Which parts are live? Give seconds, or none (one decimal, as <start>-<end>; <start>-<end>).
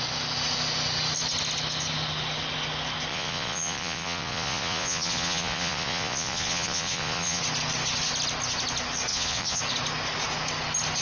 0.0-3.1; 7.4-9.1; 9.6-11.0